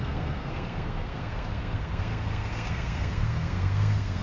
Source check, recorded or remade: remade